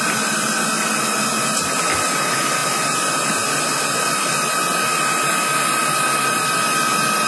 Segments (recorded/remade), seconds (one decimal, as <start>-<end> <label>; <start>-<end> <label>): 0.0-7.3 recorded